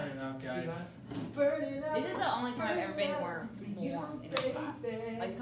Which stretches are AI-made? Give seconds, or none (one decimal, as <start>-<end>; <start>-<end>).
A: 0.0-0.5; 3.1-4.7

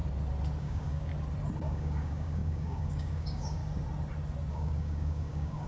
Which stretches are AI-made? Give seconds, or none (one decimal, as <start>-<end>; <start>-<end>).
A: 0.6-1.1; 1.6-3.6; 4.5-5.7

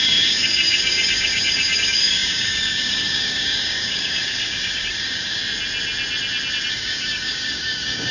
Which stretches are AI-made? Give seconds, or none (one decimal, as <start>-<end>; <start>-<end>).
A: 0.0-5.4; 6.7-8.1

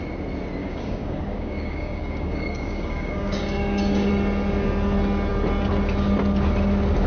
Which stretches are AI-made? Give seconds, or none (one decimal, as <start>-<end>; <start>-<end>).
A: 0.6-4.1

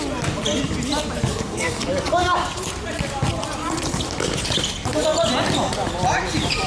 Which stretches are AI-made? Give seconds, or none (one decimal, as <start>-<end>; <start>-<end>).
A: 1.3-2.5

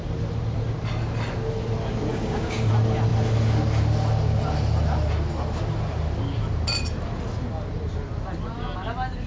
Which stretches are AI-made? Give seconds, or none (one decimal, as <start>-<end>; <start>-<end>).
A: 2.1-2.7

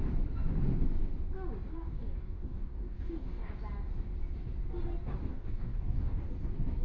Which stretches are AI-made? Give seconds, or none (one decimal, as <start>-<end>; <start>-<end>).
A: 1.7-3.5; 5.3-6.2

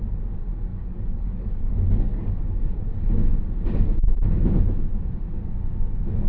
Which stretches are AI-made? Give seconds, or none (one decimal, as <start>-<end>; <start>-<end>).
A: 0.7-2.3